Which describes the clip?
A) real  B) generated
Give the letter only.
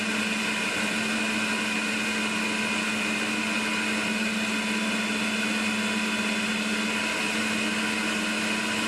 A